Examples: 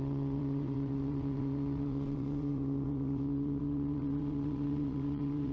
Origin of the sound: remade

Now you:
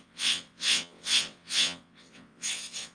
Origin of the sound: remade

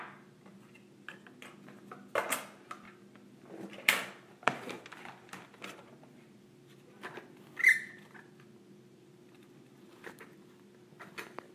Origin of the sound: recorded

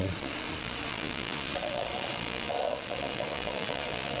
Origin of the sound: remade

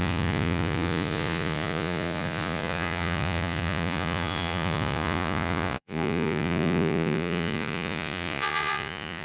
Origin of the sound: remade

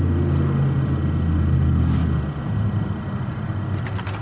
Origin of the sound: recorded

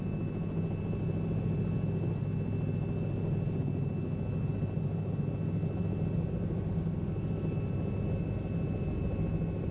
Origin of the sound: recorded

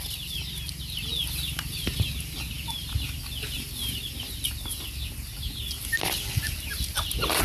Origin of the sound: recorded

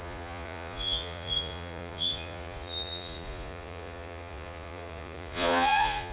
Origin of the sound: remade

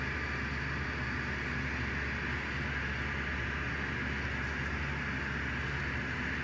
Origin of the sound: recorded